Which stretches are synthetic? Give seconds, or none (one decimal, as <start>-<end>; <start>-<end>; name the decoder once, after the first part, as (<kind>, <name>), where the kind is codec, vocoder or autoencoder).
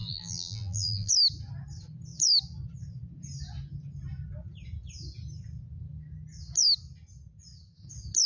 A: 0.0-1.1 (vocoder, BigVGAN v2)